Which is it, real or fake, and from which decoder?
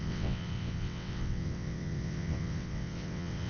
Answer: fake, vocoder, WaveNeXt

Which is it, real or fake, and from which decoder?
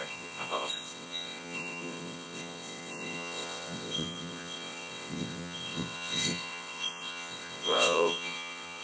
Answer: fake, vocoder, WaveNeXt